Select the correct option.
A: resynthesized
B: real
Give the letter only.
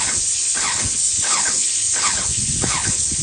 A